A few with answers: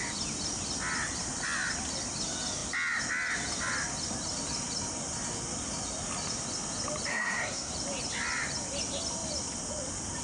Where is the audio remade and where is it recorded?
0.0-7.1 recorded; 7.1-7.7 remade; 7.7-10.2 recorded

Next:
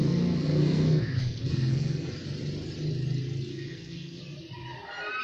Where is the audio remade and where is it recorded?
0.0-2.1 remade; 2.1-3.5 recorded; 3.5-4.2 remade; 4.2-5.2 recorded